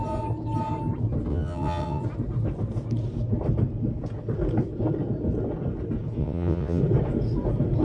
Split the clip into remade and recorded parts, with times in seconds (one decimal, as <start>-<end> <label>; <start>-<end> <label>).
0.0-1.3 recorded; 1.3-2.0 remade; 2.0-6.2 recorded; 6.2-6.8 remade; 6.8-7.8 recorded